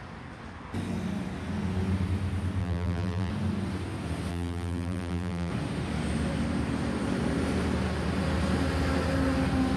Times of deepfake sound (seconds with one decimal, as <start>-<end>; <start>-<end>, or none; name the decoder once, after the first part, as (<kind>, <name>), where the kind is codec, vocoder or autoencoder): 2.6-3.3 (vocoder, BigVGAN v2); 4.3-5.5